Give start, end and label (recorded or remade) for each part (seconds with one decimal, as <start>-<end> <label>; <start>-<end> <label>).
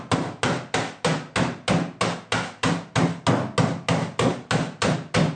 0.0-5.4 recorded